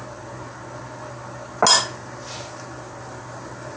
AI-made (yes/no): no